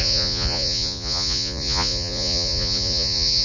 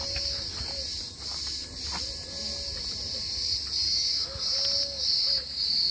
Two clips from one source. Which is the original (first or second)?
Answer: second